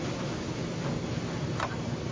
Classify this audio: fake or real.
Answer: real